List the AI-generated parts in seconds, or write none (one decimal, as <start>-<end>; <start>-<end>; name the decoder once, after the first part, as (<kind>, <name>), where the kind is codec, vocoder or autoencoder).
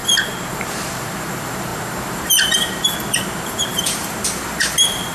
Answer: 0.5-5.1 (vocoder, BigVGAN v2)